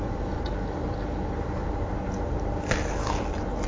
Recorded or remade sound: recorded